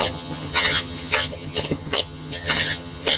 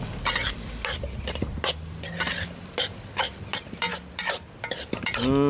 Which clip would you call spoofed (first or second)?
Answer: first